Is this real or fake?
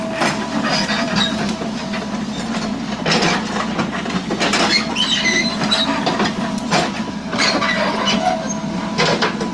real